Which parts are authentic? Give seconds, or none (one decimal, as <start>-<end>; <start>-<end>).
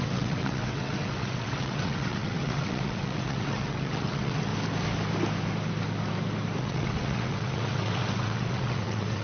4.5-6.6